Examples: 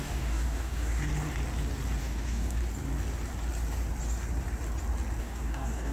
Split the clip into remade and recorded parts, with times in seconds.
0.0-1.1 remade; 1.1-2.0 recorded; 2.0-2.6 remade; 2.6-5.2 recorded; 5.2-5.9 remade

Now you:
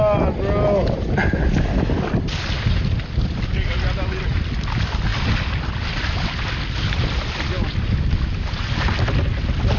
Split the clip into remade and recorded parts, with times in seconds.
0.0-9.8 recorded

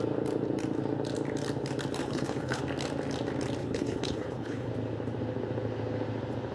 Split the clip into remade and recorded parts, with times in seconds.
0.0-2.0 recorded; 2.0-2.6 remade; 2.6-3.6 recorded; 3.6-4.7 remade; 4.7-6.5 recorded

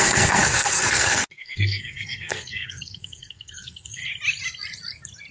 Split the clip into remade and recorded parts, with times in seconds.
0.0-4.0 remade; 4.0-5.3 recorded